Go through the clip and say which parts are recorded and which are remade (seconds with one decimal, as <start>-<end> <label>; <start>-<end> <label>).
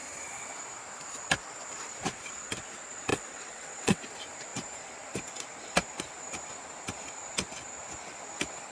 0.0-3.1 recorded; 3.1-4.0 remade; 4.0-8.7 recorded